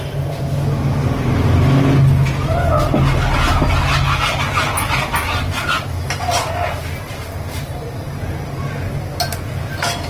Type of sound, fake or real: real